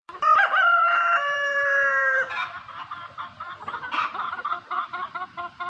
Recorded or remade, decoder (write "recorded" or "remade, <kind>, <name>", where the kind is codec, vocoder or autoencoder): remade, vocoder, BigVGAN v2